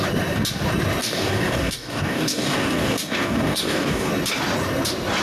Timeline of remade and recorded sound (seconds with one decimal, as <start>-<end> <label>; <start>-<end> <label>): 0.0-1.0 recorded; 1.0-4.1 remade; 4.1-5.2 recorded